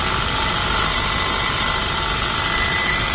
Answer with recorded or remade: recorded